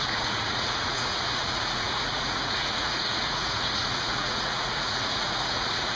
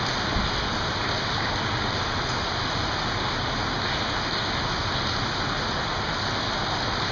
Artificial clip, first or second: first